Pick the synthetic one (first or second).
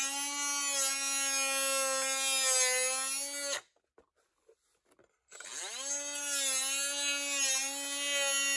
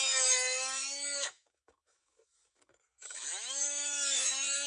second